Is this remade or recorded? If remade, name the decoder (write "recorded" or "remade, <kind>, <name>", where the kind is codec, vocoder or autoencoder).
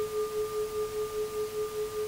recorded